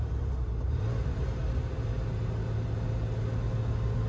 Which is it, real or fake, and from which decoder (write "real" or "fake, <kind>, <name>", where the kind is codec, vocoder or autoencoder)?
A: real